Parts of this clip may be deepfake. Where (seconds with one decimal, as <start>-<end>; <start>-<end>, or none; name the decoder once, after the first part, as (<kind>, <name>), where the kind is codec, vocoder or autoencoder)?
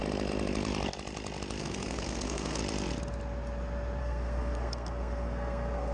1.6-2.6 (codec, SNAC); 4.0-5.9